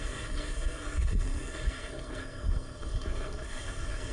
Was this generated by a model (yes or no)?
yes